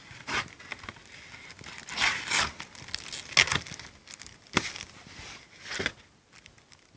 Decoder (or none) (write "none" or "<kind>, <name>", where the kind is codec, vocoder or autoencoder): none